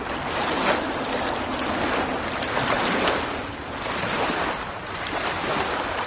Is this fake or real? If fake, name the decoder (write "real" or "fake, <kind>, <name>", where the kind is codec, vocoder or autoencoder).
real